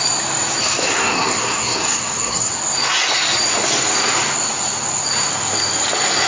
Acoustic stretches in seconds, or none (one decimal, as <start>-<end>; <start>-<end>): 0.0-0.6; 2.5-6.3